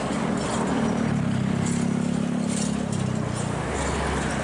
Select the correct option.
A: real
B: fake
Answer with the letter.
A